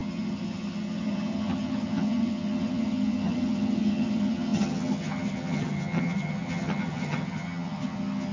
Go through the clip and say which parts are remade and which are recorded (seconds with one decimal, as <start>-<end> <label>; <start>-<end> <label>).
0.0-8.3 remade